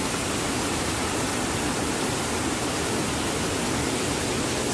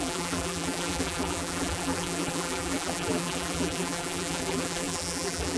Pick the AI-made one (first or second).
second